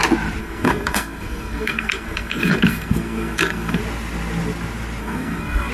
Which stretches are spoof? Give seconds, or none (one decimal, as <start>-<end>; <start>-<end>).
0.4-3.8; 5.0-5.7